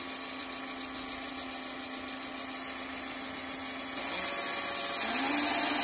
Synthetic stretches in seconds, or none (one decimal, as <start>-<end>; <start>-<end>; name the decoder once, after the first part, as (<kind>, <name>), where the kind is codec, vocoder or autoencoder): none